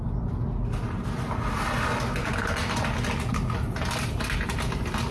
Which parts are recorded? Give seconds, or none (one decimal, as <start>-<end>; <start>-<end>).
0.0-5.1